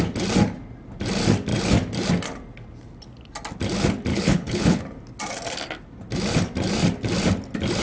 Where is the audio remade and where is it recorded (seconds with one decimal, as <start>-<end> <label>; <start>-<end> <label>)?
0.0-4.1 recorded; 4.1-4.8 remade; 4.8-7.8 recorded